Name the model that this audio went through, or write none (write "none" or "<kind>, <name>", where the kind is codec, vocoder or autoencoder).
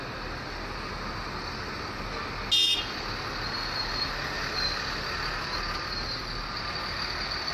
none